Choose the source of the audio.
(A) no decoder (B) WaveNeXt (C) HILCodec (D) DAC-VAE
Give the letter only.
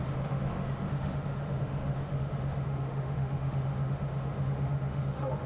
D